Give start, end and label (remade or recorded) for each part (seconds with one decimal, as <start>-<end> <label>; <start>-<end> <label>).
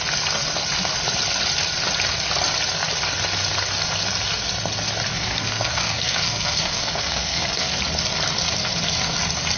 0.0-5.1 recorded; 5.1-7.8 remade; 7.8-9.6 recorded